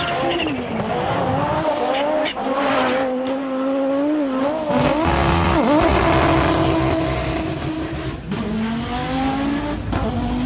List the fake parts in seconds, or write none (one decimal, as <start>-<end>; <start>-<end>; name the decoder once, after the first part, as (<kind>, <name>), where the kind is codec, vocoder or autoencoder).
none